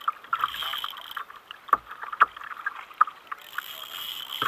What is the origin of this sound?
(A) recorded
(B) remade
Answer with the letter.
A